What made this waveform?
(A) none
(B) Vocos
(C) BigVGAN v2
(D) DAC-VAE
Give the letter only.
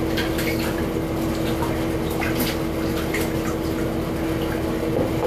A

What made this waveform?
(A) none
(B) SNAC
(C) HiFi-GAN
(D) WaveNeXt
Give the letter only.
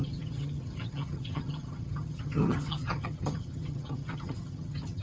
C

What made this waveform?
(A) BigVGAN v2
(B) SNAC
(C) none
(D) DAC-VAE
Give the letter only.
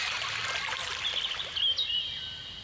C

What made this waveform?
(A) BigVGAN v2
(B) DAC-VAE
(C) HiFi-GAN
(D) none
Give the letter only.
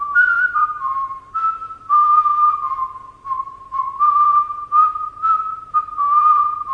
A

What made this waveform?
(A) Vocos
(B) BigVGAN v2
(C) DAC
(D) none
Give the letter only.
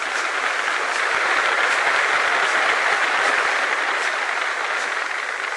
D